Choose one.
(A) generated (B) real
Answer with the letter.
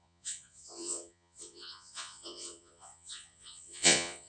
A